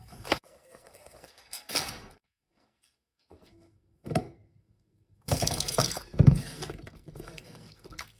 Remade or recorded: remade